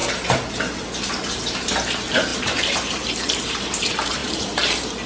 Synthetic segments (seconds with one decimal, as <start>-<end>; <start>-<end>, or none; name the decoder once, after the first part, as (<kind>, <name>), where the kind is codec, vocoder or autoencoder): 1.1-5.1 (vocoder, BigVGAN v2)